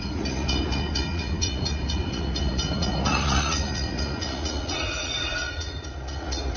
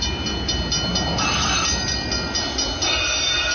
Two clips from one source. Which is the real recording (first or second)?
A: second